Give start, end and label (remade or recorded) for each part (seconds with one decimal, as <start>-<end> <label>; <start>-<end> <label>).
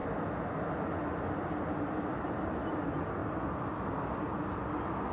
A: 0.0-5.1 recorded